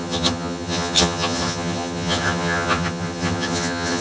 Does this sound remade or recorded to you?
remade